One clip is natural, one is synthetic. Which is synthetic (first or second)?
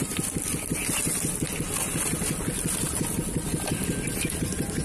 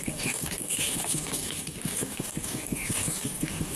second